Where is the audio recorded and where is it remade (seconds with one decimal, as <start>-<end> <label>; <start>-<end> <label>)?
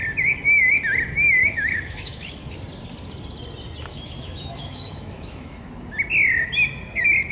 0.0-1.4 recorded; 1.4-2.5 remade; 2.5-3.9 recorded; 3.9-5.7 remade; 5.7-7.3 recorded